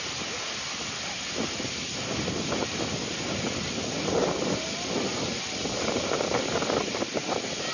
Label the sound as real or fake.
real